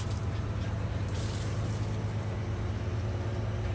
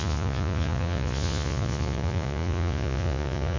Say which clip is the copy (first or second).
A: second